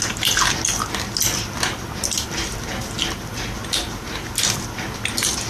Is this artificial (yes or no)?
no